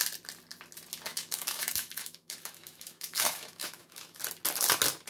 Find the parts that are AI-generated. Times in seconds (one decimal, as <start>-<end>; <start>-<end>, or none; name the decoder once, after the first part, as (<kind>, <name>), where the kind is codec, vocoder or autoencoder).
1.1-4.2 (autoencoder, DAC-VAE)